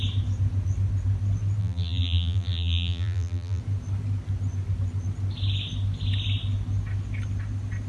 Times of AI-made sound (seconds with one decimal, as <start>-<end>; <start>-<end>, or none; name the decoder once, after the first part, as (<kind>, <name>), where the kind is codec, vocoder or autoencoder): 1.6-3.6 (vocoder, BigVGAN v2)